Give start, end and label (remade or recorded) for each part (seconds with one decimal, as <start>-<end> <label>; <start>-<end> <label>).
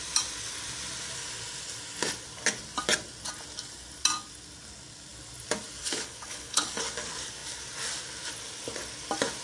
0.0-5.8 recorded; 5.8-6.8 remade; 6.8-9.4 recorded